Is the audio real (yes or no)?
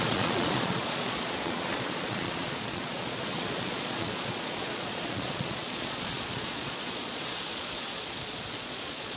no